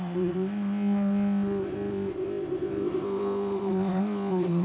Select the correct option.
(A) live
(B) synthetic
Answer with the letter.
B